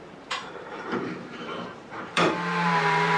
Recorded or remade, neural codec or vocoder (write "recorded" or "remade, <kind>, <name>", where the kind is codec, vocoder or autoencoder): remade, vocoder, BigVGAN v2